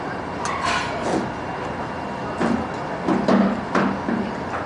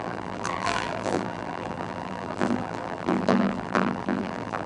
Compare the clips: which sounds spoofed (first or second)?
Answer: second